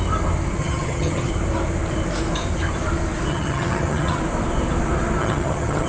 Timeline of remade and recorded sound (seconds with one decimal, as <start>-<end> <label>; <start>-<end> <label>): 0.0-0.6 recorded; 0.6-1.3 remade; 1.3-3.3 recorded; 3.3-4.2 remade; 4.2-5.2 recorded; 5.2-5.9 remade